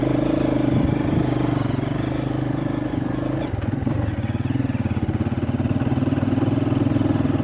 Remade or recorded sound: recorded